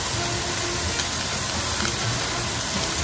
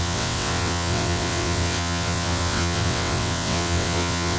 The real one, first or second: first